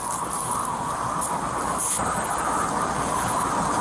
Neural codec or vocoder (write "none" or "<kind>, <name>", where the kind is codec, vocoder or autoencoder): none